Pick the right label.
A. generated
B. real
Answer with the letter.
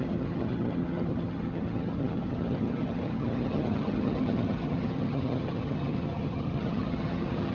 A